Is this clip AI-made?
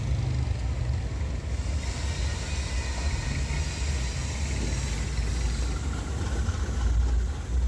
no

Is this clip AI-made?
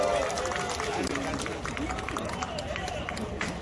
no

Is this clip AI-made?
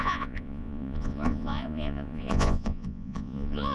yes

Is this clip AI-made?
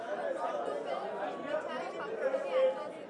no